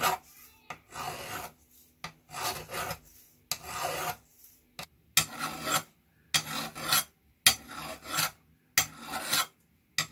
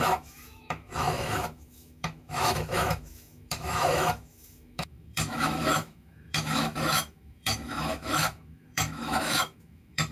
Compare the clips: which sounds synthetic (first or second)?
second